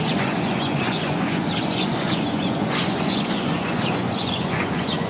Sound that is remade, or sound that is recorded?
remade